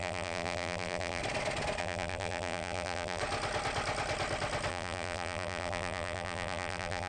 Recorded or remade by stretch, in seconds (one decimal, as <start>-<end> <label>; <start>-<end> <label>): 0.0-1.2 remade; 1.2-1.8 recorded; 1.8-3.2 remade; 3.2-4.7 recorded; 4.7-7.1 remade